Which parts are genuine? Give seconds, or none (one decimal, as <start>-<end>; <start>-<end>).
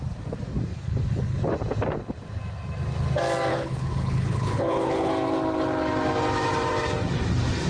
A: 0.0-0.7; 1.4-3.5; 5.1-7.7